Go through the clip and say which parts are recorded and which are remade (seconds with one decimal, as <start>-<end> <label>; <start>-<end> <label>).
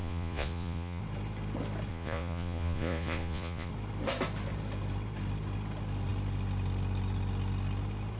0.0-1.0 remade; 1.0-1.9 recorded; 1.9-3.7 remade; 3.7-8.2 recorded